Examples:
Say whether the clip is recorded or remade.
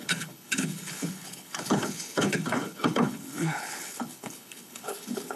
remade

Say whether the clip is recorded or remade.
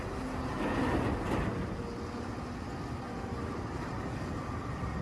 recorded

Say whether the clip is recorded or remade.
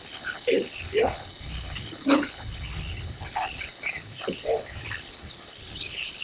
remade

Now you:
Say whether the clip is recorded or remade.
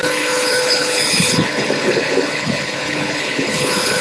remade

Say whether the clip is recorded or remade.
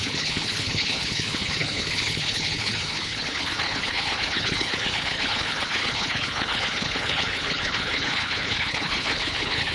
remade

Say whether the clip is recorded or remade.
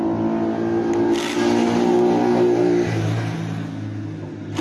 recorded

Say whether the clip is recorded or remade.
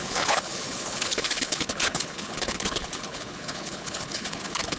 remade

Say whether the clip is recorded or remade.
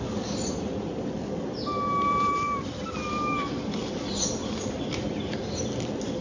recorded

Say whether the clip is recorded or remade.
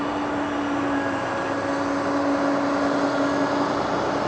recorded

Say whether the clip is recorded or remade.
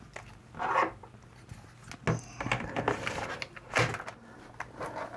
recorded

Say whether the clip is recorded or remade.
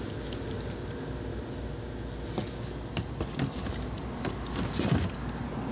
recorded